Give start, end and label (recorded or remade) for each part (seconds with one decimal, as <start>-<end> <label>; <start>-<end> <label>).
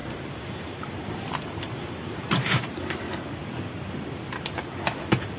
0.0-3.2 remade; 3.2-5.4 recorded